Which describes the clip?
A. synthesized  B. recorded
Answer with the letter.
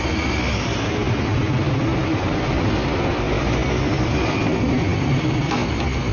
B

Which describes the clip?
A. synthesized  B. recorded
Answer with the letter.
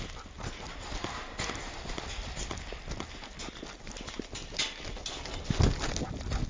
B